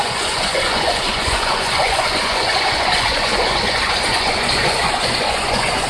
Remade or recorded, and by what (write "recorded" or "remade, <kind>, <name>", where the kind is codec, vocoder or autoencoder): remade, vocoder, Vocos